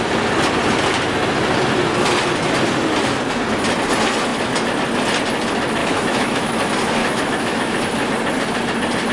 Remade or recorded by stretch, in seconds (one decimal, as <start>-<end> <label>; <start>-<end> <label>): 0.0-5.8 recorded; 5.8-6.5 remade; 6.5-7.0 recorded; 7.0-7.8 remade; 7.8-9.1 recorded